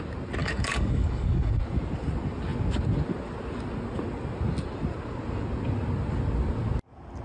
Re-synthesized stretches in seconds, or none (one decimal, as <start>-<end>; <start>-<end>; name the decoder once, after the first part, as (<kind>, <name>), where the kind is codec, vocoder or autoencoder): 0.4-1.6 (codec, DAC)